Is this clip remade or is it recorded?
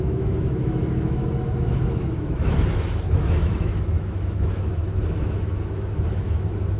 remade